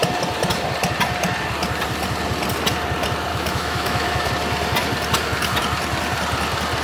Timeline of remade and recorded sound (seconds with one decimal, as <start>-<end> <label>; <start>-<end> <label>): 0.0-3.3 recorded; 3.3-4.3 remade; 4.3-6.8 recorded